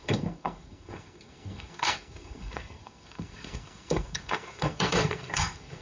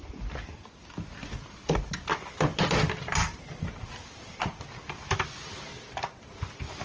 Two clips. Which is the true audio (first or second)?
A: second